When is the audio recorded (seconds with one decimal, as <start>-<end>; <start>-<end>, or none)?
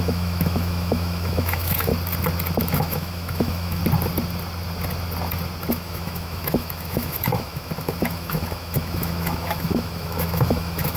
1.9-2.6; 3.8-5.7